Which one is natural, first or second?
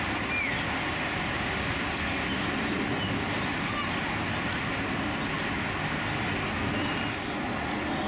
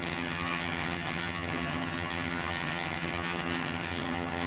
first